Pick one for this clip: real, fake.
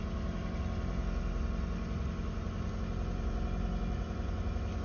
real